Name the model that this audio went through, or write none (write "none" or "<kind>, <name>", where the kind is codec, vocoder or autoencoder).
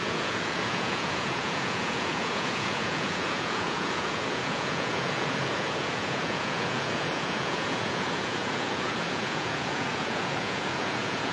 vocoder, Vocos